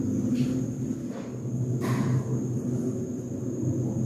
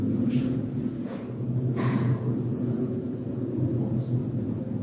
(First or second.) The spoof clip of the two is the second